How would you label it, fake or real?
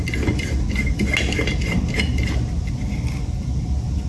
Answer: real